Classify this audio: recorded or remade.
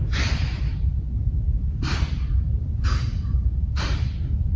recorded